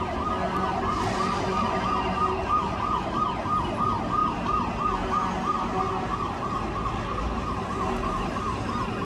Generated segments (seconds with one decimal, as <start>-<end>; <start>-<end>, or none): 2.6-3.8